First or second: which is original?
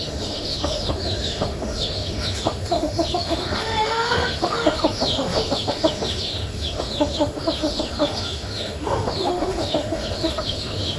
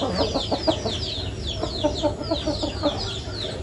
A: second